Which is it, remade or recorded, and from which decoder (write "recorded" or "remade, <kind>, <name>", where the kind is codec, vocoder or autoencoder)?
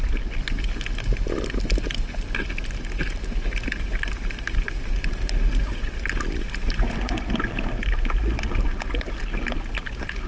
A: recorded